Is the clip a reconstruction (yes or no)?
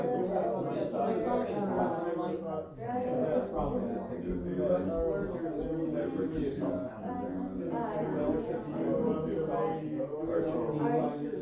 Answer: no